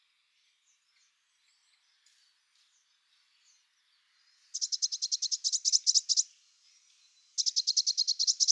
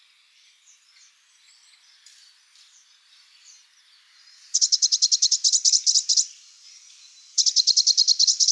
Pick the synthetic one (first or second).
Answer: second